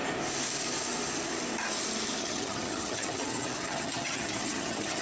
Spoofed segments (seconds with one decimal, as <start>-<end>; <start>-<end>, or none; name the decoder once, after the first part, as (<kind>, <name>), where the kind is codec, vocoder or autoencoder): 2.2-5.0 (vocoder, HiFi-GAN)